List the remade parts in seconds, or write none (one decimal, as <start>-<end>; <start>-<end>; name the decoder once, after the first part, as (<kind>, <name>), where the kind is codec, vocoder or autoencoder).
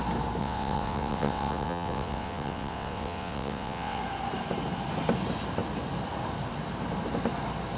0.4-4.0 (vocoder, WaveNeXt)